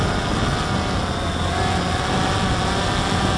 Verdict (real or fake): real